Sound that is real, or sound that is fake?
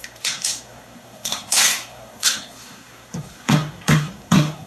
fake